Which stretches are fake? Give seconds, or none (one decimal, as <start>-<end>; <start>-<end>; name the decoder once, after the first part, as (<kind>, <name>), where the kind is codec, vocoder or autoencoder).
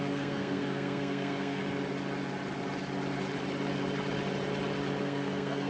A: 0.0-1.6 (codec, SNAC); 5.0-5.7